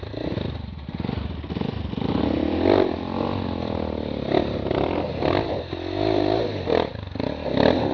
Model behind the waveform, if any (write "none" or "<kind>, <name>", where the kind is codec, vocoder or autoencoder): none